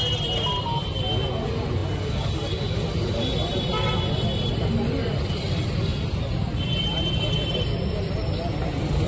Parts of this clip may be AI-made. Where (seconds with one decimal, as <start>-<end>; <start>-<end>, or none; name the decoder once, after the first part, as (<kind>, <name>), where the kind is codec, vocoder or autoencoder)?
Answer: none